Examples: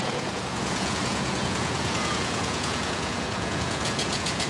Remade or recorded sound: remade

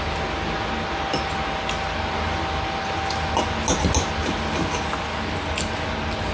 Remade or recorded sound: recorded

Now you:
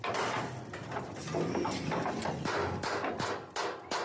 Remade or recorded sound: recorded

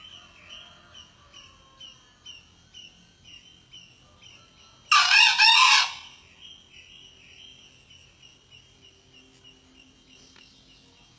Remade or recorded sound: recorded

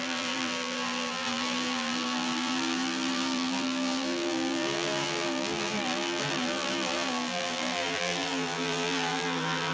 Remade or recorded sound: remade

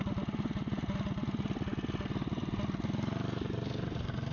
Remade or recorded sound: recorded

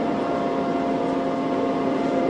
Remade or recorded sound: recorded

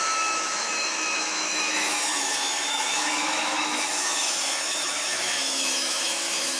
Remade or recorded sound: remade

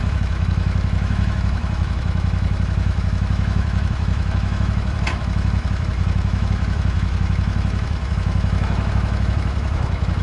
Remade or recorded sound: remade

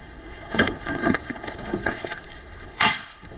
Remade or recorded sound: remade